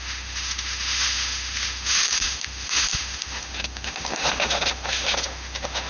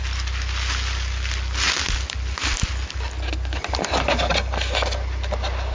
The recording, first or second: second